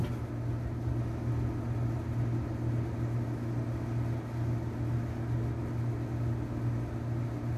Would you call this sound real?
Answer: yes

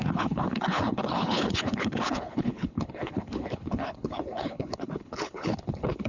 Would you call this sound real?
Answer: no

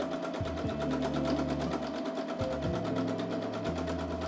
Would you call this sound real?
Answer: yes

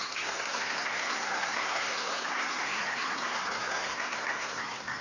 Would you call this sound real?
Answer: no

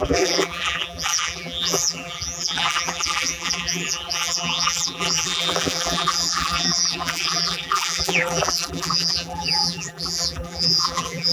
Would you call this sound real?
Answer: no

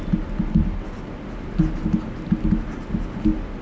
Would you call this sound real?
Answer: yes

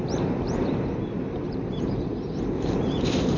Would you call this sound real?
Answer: no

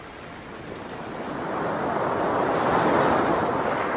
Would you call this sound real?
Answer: yes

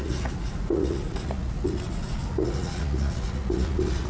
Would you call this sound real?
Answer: no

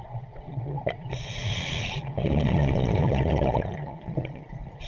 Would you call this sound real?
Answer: no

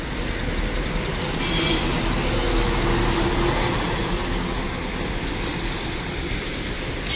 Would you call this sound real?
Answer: yes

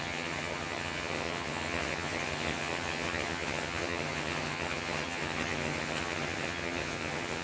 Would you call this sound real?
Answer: no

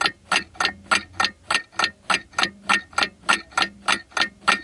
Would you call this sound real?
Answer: yes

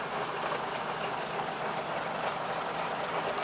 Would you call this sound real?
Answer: yes